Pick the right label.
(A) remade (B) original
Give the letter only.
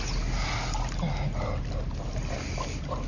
B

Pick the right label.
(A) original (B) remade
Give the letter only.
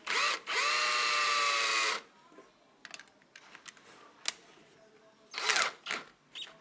A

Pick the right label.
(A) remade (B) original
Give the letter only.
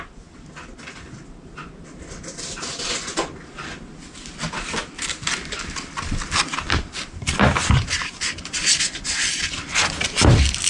B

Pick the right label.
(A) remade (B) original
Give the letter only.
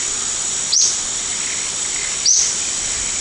B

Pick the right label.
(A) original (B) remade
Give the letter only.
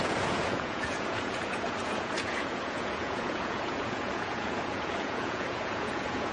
B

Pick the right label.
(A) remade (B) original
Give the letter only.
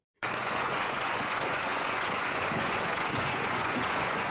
A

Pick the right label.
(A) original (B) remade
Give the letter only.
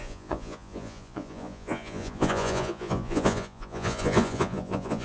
B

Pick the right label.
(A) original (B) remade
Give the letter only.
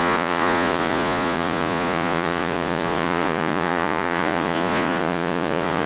B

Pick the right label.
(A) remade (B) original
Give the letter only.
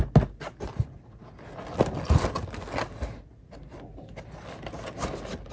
B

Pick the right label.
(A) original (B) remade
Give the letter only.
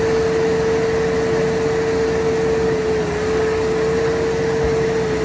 A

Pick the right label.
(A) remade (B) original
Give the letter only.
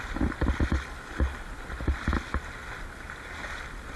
B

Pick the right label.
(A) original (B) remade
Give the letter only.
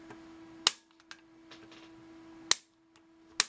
A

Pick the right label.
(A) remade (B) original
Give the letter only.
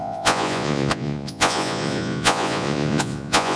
A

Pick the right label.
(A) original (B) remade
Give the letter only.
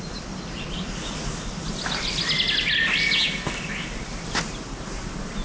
A